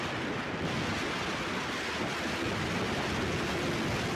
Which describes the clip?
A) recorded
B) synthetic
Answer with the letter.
A